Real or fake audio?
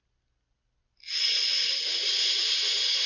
real